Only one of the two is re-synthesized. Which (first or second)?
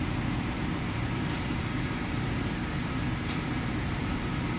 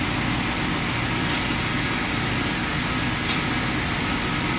first